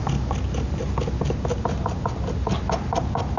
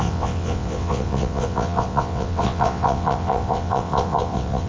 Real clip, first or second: first